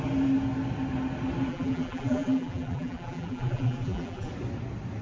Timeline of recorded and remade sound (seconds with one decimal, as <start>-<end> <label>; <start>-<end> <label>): 0.0-1.5 recorded; 1.5-4.3 remade; 4.3-5.0 recorded